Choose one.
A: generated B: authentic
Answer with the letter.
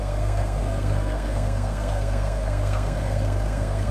A